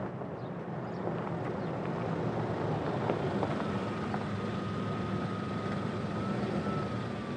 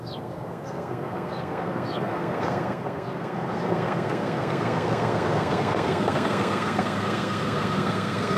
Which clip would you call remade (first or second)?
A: second